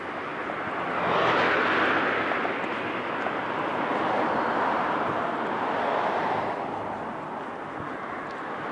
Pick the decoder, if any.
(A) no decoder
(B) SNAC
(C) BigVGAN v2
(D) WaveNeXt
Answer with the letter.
A